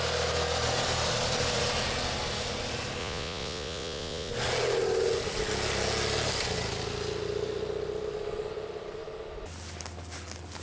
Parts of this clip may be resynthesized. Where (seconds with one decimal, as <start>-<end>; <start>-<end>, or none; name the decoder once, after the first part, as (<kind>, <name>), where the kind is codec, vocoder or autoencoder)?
3.0-4.3 (vocoder, Vocos)

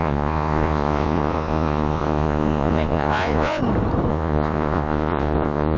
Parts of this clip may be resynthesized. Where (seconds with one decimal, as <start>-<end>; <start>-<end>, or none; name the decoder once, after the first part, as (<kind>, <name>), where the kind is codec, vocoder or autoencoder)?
0.0-3.6 (vocoder, Vocos); 4.1-5.8

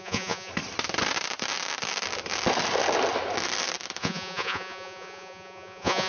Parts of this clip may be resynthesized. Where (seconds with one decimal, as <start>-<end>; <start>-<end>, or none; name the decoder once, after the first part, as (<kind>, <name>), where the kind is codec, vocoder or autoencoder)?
0.0-0.5 (vocoder, Vocos); 4.0-6.1

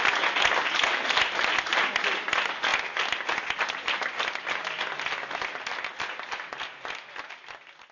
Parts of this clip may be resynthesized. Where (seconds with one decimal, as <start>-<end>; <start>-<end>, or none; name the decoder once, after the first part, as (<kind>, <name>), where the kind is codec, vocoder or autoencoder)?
none